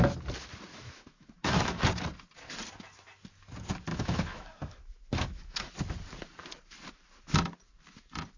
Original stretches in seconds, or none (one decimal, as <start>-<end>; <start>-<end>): 0.0-0.7; 1.8-3.9; 5.7-8.4